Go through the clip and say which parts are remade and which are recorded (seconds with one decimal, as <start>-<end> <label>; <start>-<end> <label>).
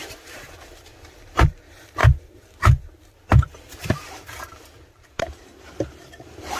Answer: 0.0-2.0 remade; 2.0-3.8 recorded; 3.8-6.6 remade